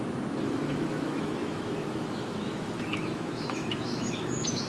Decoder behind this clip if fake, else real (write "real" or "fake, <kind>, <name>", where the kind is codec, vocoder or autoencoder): fake, autoencoder, DAC-VAE